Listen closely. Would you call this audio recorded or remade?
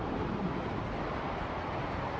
recorded